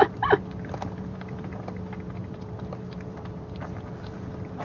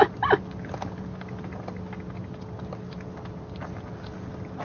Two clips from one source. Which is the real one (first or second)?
second